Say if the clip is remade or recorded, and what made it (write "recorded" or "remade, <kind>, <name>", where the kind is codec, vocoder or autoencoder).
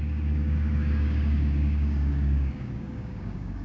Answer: remade, codec, DAC